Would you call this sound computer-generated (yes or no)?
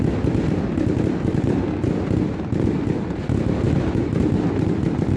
no